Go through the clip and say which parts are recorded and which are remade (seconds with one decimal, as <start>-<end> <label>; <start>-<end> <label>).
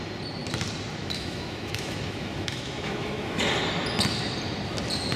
0.0-1.0 recorded; 1.0-3.4 remade; 3.4-5.2 recorded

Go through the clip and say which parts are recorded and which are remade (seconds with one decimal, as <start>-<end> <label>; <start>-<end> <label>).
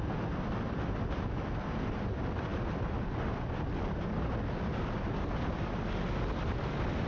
0.0-7.1 recorded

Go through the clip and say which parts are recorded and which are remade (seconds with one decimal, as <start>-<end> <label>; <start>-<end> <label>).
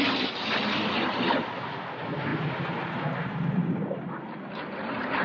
0.0-5.2 recorded